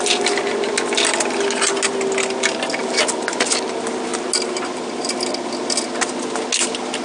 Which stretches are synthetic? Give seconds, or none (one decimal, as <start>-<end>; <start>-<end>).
none